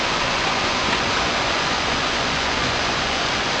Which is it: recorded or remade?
remade